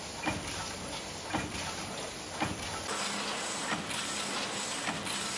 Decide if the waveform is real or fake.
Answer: real